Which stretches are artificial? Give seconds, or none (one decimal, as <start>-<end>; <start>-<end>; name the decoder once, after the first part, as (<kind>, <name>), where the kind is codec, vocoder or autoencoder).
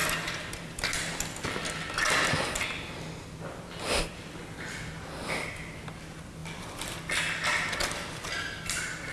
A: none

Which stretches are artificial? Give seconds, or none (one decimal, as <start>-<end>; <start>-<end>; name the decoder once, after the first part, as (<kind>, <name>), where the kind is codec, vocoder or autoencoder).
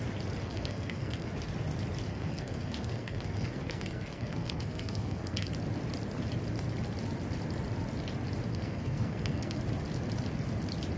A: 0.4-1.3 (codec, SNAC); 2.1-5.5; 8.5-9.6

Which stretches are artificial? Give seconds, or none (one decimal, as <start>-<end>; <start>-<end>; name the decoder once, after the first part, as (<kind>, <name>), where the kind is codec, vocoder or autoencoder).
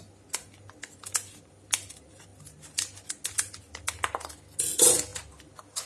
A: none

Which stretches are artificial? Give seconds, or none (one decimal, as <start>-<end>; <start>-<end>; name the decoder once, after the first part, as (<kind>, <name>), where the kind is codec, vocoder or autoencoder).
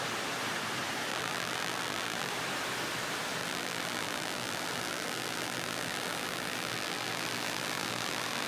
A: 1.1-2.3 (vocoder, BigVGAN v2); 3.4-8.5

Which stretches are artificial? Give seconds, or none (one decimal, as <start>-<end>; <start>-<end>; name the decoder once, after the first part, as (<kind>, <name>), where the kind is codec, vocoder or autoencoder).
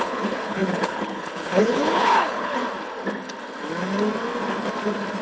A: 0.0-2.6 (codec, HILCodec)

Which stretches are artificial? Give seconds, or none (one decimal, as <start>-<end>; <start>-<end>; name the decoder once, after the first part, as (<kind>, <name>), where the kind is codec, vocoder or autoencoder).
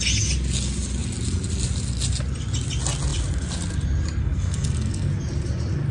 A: 4.2-5.1 (codec, SNAC)